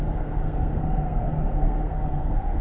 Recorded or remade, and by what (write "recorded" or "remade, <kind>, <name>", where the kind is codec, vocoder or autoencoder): remade, codec, SNAC